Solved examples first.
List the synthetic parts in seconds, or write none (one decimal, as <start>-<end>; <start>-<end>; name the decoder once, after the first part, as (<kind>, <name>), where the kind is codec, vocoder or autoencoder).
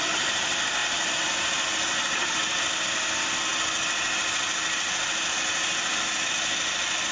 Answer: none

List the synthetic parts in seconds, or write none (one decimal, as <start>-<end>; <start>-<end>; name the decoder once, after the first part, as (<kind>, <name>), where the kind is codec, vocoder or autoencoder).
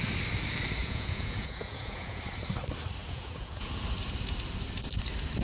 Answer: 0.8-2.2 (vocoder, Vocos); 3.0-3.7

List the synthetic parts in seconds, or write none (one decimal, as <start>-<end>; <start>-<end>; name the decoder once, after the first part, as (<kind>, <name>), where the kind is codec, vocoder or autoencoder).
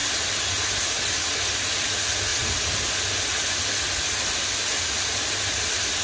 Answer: none